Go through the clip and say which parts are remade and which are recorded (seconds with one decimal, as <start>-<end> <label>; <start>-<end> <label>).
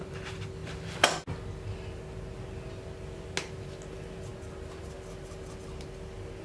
0.0-6.4 recorded